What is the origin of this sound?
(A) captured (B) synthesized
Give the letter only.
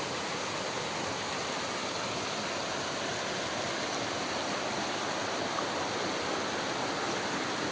A